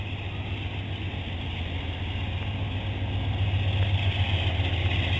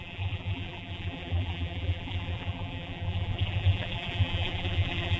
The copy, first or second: second